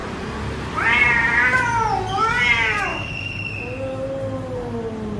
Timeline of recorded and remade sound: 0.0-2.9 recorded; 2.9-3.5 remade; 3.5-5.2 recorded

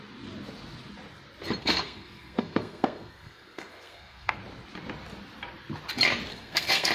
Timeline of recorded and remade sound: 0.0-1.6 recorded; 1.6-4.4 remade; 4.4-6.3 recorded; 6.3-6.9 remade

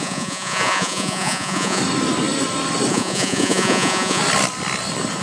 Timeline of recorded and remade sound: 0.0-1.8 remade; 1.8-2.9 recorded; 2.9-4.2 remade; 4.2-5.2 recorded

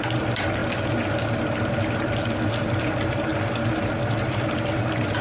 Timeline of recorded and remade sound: 0.0-0.6 remade; 0.6-1.3 recorded; 1.3-5.2 remade

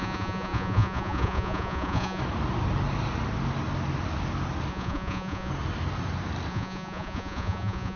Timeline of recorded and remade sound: 0.0-2.2 remade; 2.2-4.7 recorded; 4.7-5.5 remade; 5.5-6.5 recorded; 6.5-8.0 remade